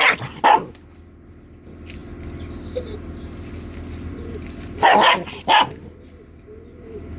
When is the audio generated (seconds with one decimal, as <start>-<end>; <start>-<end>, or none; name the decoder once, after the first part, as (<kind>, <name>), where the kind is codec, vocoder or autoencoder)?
none